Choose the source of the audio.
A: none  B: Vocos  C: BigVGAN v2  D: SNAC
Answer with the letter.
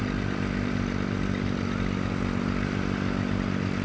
A